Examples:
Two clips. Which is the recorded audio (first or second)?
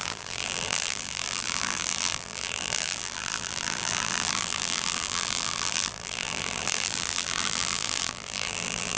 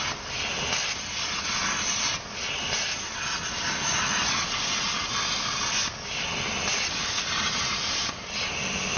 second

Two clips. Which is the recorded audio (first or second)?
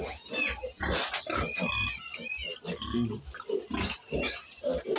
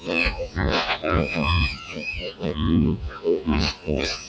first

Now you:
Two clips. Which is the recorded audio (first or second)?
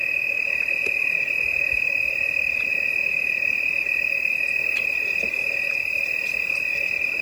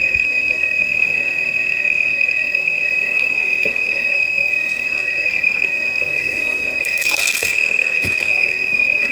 first